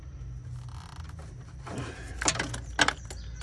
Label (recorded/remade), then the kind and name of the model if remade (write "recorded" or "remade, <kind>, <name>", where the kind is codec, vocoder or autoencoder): recorded